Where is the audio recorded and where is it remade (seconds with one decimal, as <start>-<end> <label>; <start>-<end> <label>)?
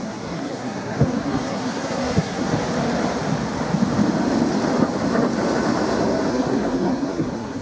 0.0-2.5 remade; 2.5-6.3 recorded; 6.3-7.6 remade